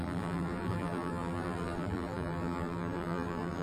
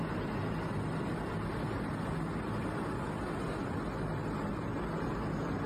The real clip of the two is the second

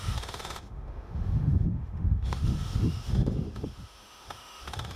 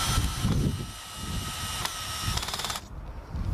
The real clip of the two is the second